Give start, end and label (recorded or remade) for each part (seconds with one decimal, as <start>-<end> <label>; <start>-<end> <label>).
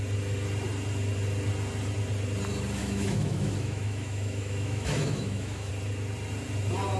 0.0-2.8 recorded; 2.8-5.7 remade; 5.7-7.0 recorded